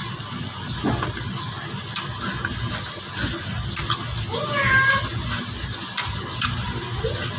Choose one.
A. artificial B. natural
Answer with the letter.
B